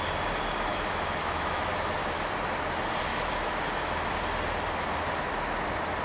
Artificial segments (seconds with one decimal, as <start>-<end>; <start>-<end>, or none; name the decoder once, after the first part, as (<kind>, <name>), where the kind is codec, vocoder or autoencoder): 0.7-1.7 (autoencoder, DAC-VAE); 3.1-4.1